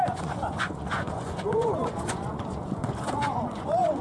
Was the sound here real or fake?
fake